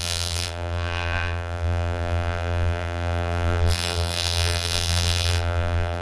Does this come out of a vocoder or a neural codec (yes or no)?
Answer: yes